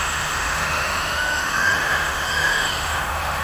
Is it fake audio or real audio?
fake